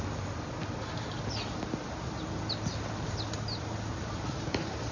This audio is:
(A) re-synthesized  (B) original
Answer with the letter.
B